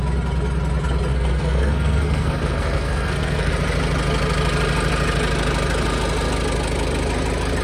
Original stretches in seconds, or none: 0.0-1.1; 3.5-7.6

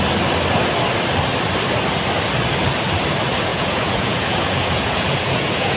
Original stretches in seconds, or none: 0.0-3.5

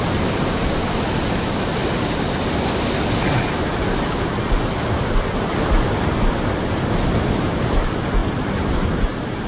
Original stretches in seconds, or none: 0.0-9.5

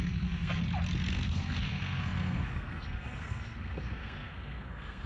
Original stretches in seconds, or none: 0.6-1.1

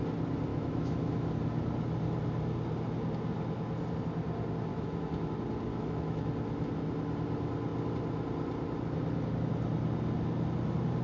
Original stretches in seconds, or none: 0.0-0.5; 1.3-4.7; 5.3-5.7; 6.3-11.0

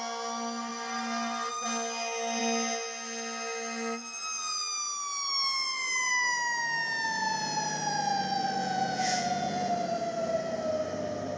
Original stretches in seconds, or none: 0.0-8.6; 9.7-11.4

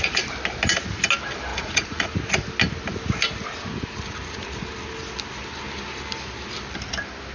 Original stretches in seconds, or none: 0.0-1.5; 2.1-7.3